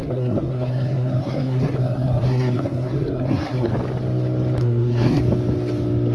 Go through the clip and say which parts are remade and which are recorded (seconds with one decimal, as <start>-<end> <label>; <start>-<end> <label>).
0.0-3.7 remade; 3.7-4.6 recorded; 4.6-5.2 remade; 5.2-6.1 recorded